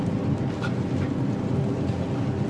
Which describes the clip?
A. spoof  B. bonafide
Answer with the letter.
B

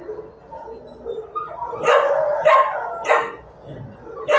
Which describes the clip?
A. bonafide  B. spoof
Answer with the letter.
A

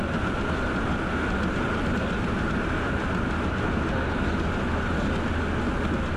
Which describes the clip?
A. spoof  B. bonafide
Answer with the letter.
B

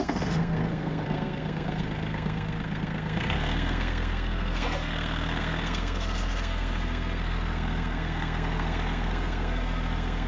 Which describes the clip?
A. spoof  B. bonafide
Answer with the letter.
A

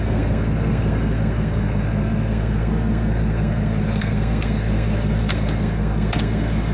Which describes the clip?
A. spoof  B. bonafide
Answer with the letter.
A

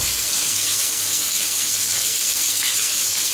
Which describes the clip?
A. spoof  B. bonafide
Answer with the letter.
A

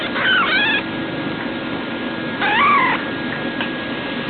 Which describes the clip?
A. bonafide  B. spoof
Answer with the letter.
A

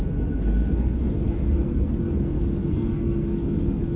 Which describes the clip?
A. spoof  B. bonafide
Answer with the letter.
A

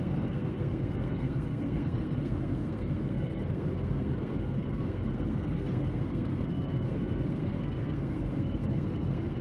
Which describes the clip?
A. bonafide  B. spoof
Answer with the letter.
B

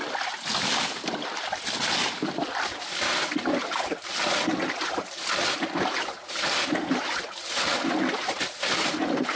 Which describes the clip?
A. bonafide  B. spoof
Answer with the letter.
A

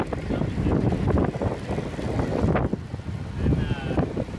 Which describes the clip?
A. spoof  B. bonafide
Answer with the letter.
B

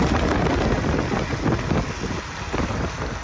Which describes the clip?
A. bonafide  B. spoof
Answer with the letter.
A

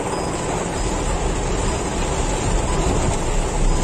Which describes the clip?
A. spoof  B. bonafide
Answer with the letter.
B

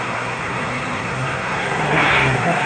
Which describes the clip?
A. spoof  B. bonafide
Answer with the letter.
A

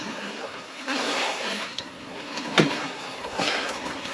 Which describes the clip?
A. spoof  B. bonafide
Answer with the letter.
A